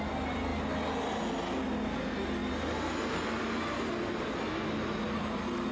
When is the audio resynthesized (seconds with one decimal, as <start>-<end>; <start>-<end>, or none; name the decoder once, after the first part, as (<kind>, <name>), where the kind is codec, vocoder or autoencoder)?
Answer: none